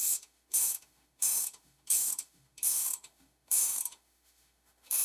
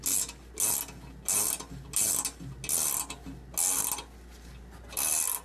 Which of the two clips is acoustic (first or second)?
second